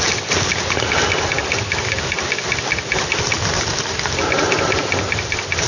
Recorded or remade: recorded